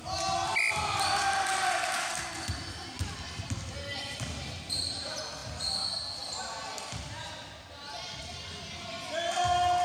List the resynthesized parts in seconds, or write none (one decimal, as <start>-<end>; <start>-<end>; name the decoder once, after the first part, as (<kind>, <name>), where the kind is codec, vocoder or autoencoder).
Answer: none